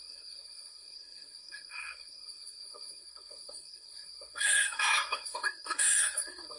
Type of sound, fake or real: fake